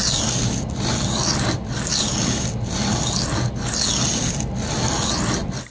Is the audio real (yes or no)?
yes